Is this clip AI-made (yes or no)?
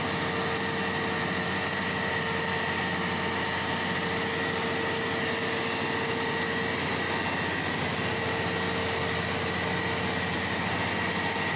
no